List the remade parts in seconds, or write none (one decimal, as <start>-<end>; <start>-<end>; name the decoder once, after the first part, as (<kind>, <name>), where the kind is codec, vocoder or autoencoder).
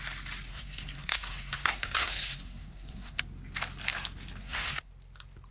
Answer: 0.5-3.2 (codec, SNAC); 4.4-4.9